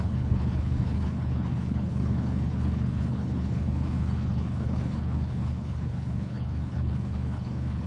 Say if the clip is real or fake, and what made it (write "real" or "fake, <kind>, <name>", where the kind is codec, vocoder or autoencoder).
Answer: fake, codec, HILCodec